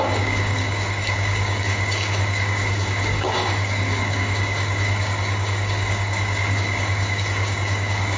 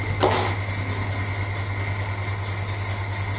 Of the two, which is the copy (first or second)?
first